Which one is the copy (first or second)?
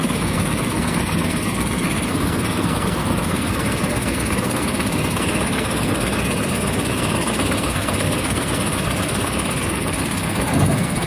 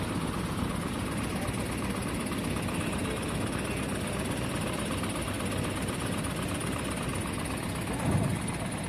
first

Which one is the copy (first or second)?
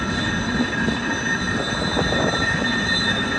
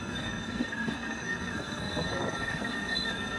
second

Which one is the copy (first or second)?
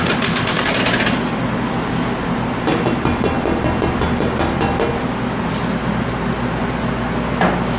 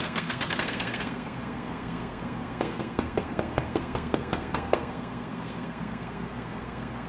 second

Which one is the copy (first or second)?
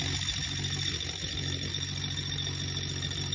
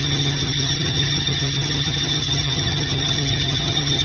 second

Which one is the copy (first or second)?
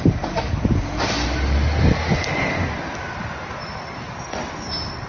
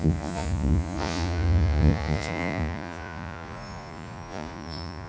second